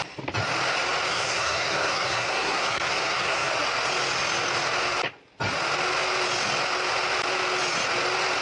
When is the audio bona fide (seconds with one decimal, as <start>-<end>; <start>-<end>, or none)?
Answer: 0.0-1.1; 3.5-8.4